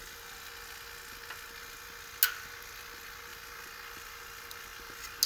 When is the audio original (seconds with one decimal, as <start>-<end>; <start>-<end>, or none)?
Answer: 0.0-5.3